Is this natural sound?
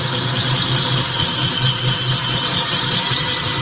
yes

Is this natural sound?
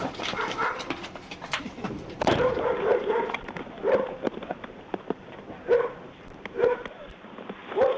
no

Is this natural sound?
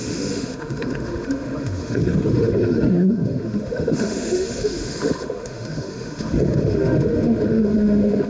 no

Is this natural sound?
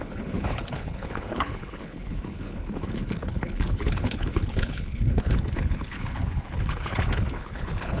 no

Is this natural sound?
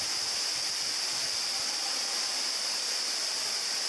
yes